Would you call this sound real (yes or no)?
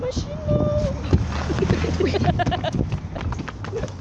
yes